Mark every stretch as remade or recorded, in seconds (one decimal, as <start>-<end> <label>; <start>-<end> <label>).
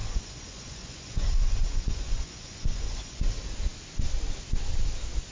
0.0-3.2 remade; 3.2-5.3 recorded